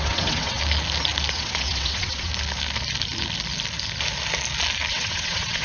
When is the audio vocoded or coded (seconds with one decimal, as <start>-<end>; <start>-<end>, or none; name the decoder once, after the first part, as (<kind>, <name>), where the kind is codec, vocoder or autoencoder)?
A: 0.0-0.6 (vocoder, WaveNeXt); 1.3-2.3; 4.9-5.6